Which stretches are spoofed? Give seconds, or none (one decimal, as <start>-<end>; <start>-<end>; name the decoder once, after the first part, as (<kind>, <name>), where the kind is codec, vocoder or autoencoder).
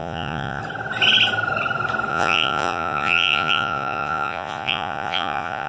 0.0-0.6 (vocoder, Vocos); 2.1-5.7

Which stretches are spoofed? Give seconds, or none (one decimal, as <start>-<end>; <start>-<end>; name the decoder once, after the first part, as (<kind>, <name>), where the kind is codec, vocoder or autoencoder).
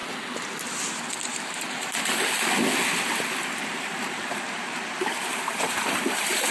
3.8-6.5 (vocoder, BigVGAN v2)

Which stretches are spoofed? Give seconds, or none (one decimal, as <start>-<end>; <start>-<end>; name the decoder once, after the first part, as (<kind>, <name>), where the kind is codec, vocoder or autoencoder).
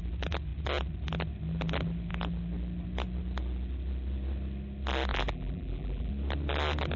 5.1-6.1 (vocoder, BigVGAN v2)